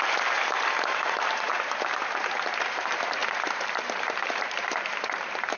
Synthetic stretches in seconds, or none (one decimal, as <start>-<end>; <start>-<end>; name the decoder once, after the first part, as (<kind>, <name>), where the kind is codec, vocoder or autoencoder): 0.0-5.6 (vocoder, BigVGAN v2)